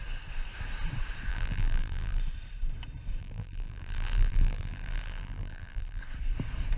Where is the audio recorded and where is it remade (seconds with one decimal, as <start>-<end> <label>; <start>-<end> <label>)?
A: 0.0-1.3 recorded; 1.3-2.2 remade; 2.2-3.2 recorded; 3.2-6.0 remade; 6.0-6.8 recorded